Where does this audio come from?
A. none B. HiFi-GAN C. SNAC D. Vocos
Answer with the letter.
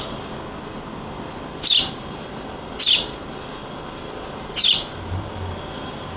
A